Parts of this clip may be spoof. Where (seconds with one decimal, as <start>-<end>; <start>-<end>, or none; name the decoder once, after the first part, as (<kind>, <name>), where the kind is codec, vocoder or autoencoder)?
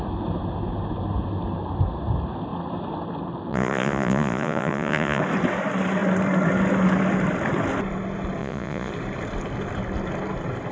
3.5-5.2 (vocoder, Vocos); 8.4-8.9